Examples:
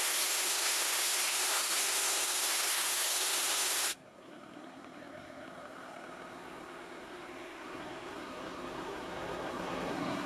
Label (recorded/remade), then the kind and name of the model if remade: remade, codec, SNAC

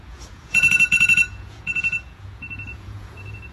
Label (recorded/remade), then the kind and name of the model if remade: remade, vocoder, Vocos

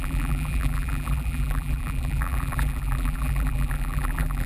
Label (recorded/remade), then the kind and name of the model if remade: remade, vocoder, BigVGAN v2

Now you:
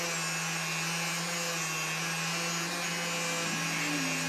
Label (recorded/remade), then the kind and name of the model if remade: recorded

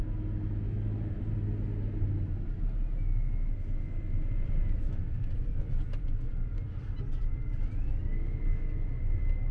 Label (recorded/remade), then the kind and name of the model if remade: recorded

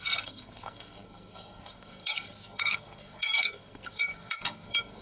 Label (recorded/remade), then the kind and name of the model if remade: remade, codec, SNAC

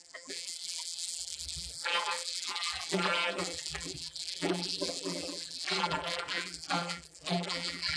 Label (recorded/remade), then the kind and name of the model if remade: remade, vocoder, BigVGAN v2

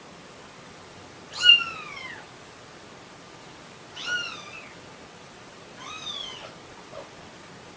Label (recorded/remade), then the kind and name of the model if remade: recorded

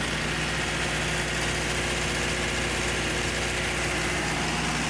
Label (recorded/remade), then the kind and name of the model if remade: recorded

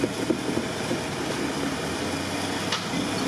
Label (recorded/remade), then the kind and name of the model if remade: recorded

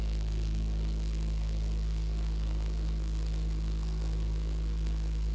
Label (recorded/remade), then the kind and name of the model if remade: remade, codec, SNAC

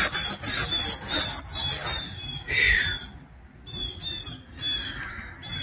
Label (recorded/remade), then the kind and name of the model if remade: recorded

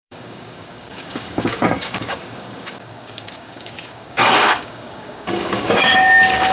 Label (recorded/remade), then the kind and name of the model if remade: remade, codec, DAC